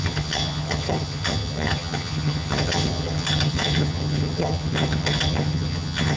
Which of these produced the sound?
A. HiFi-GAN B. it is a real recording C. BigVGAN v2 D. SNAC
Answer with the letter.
A